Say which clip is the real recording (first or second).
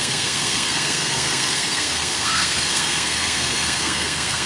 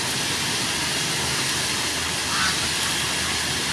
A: second